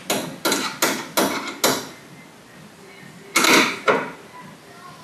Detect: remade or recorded recorded